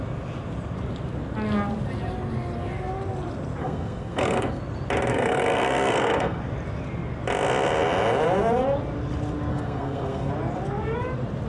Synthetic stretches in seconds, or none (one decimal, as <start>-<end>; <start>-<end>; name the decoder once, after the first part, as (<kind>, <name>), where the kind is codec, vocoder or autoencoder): 3.6-4.6 (codec, SNAC); 5.1-6.4; 9.5-10.3